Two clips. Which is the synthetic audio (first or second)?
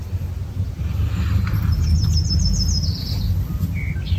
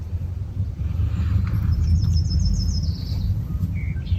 second